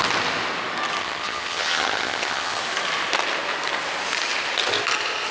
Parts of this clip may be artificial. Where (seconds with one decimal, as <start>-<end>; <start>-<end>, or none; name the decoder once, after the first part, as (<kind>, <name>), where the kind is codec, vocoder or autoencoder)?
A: 1.0-2.6 (vocoder, HiFi-GAN)